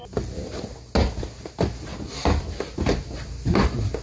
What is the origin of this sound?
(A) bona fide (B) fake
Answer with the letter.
A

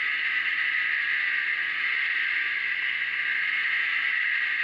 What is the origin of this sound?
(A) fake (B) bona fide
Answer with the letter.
B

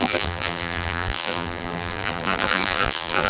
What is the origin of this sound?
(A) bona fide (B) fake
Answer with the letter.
B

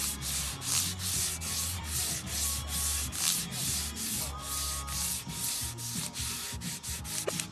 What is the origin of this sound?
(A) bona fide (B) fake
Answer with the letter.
A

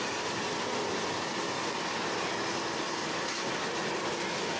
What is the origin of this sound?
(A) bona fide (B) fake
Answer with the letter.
A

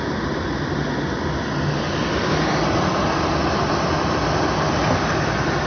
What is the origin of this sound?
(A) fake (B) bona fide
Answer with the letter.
B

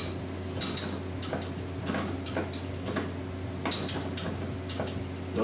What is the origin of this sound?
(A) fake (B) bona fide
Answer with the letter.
B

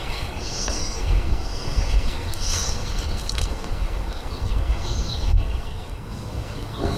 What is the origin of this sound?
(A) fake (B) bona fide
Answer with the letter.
A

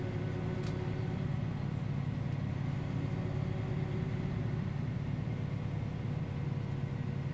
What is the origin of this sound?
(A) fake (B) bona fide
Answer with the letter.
B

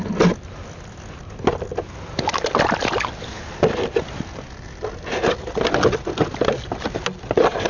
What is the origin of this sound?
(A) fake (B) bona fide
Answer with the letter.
B